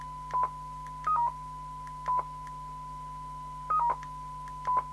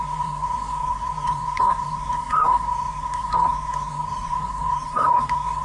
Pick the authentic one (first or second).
first